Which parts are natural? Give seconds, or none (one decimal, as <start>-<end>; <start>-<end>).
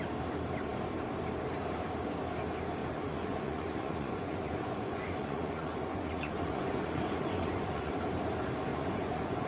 0.0-2.8; 7.9-8.7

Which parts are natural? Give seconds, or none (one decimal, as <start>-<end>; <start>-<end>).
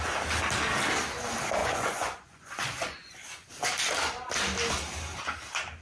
0.0-1.6; 3.5-5.8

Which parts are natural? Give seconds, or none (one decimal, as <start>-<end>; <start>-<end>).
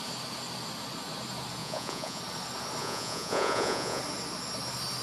0.0-1.6; 2.2-2.8; 4.0-5.0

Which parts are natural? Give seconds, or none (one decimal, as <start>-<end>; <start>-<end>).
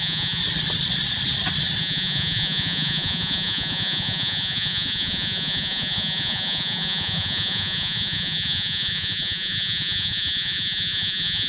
0.4-1.8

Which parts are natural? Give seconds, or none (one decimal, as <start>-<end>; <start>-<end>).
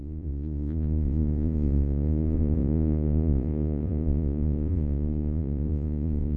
none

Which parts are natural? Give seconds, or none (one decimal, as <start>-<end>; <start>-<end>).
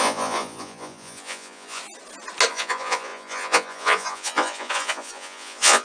1.8-2.5